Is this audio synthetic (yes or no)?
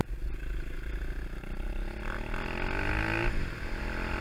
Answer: no